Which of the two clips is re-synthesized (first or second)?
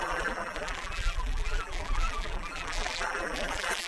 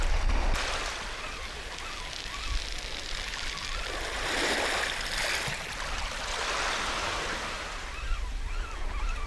first